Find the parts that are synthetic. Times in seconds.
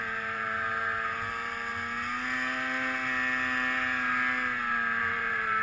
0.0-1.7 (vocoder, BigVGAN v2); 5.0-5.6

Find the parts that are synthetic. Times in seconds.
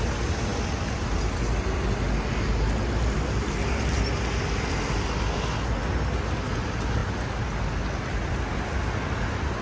none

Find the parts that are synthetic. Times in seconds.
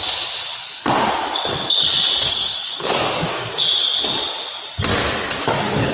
0.5-1.1 (codec, DAC); 2.2-3.5; 4.9-5.9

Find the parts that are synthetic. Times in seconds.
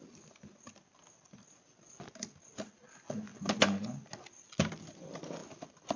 none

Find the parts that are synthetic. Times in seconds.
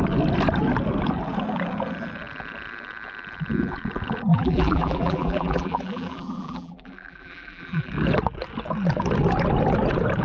4.3-7.9 (vocoder, BigVGAN v2)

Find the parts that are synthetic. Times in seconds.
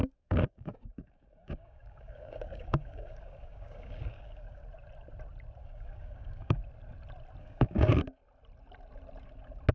0.0-4.6 (codec, DAC); 5.6-6.6; 7.4-8.2